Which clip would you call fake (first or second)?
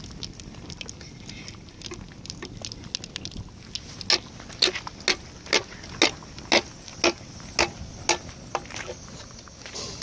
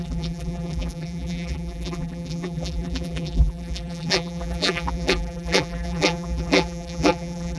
second